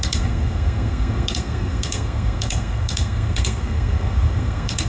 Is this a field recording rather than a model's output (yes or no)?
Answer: no